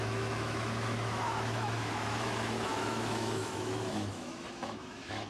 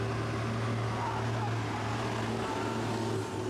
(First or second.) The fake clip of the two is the first